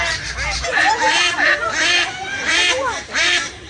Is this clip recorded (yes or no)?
no